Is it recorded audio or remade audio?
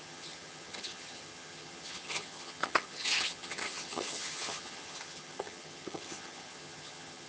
remade